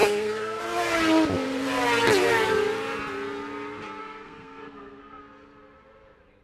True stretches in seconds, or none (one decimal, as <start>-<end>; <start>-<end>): 0.6-4.0; 5.2-6.4